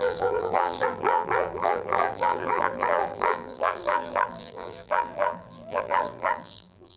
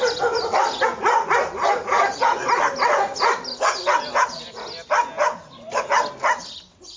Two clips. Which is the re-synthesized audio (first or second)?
first